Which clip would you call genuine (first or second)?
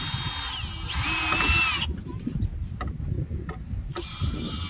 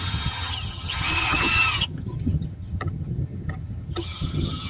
first